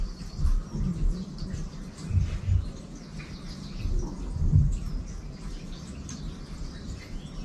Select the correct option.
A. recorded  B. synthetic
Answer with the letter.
A